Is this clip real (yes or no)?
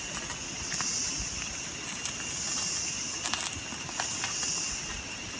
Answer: yes